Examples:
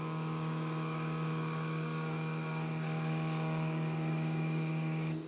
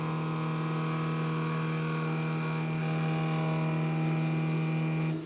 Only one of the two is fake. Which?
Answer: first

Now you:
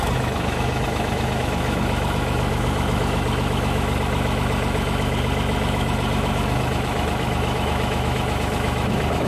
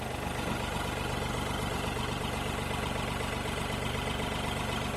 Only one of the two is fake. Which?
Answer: first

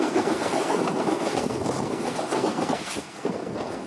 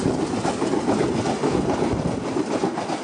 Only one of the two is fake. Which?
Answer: first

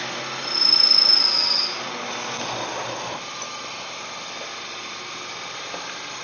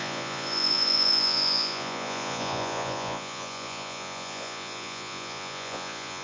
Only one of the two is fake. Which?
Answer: second